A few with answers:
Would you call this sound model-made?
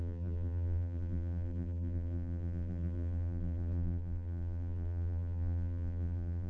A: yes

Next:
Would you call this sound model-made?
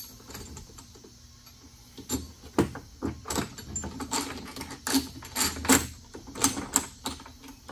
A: no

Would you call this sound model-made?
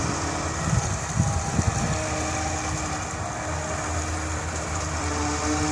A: no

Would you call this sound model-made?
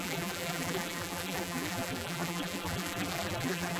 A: yes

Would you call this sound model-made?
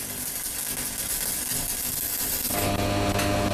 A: no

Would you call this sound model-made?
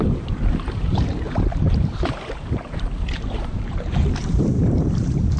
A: yes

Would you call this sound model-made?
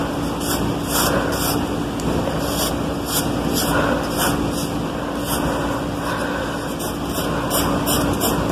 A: no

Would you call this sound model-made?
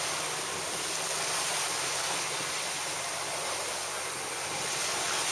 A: no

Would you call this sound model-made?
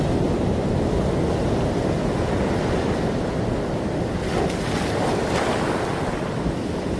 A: no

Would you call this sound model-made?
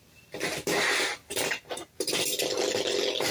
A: yes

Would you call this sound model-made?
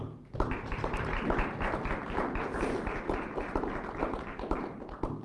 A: no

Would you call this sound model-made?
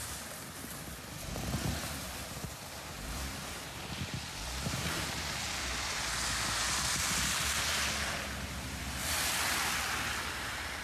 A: yes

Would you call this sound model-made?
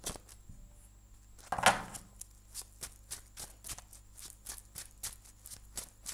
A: no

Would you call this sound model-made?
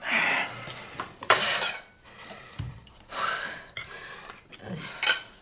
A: yes